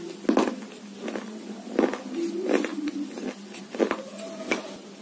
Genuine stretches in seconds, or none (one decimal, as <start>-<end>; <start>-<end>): 0.0-5.0